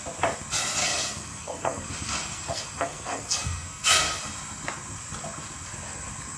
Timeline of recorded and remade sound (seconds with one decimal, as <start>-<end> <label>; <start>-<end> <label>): 0.0-0.8 recorded; 0.8-4.2 remade; 4.2-6.4 recorded